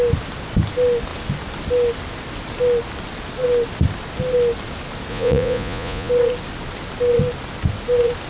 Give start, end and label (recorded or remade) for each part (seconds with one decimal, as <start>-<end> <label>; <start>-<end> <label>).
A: 0.0-5.1 recorded; 5.1-6.1 remade; 6.1-8.3 recorded